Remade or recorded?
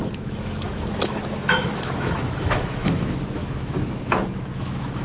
remade